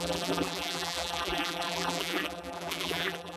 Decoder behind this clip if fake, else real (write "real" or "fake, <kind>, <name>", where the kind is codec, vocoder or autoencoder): fake, vocoder, BigVGAN v2